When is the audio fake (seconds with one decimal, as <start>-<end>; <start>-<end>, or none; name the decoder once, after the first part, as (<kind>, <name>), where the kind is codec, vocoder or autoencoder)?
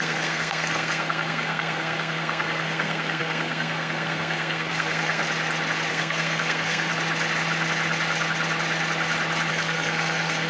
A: 0.0-5.2 (codec, SNAC); 5.9-6.9; 9.5-10.5